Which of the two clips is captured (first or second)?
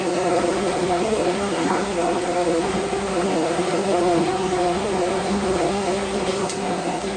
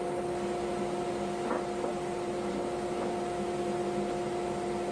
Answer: second